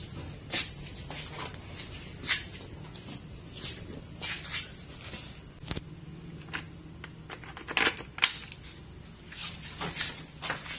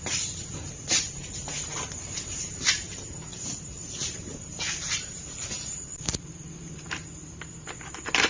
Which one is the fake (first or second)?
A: second